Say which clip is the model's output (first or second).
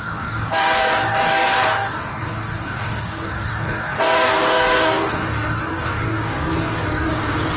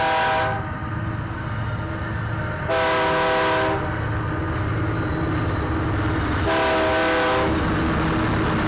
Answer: first